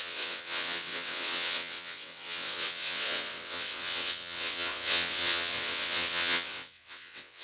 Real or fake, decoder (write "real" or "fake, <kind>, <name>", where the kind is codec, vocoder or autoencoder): fake, vocoder, WaveNeXt